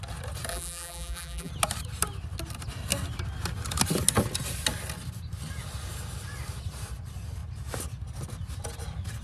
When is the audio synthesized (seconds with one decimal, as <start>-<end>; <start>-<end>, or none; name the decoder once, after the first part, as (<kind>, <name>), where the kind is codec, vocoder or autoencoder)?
0.5-1.5 (vocoder, BigVGAN v2)